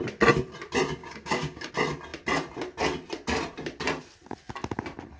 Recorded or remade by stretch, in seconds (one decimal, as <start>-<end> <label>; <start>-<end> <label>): 0.0-1.0 recorded; 1.0-1.7 remade; 1.7-5.2 recorded